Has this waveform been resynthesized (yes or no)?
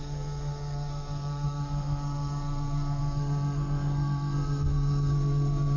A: yes